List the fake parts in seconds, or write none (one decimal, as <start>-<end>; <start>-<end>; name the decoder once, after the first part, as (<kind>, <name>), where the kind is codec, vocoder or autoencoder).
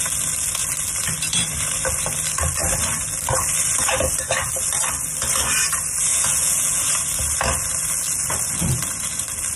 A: 6.1-6.8 (vocoder, Vocos)